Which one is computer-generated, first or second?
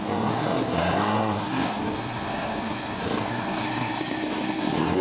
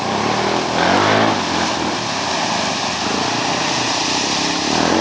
first